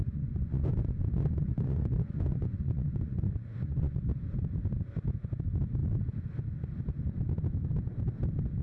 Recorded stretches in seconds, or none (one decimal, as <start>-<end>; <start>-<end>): 4.0-8.6